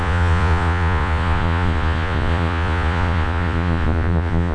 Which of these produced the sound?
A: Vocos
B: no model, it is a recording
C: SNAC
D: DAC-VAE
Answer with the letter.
A